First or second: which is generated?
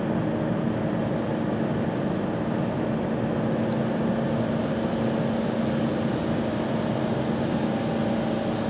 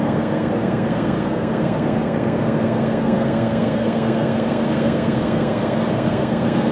second